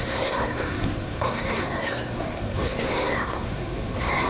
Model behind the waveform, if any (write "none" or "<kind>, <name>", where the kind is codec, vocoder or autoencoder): codec, SNAC